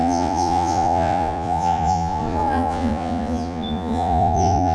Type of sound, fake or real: fake